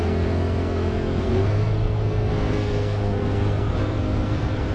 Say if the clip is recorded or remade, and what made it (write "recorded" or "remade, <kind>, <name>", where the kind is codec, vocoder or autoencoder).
remade, codec, SNAC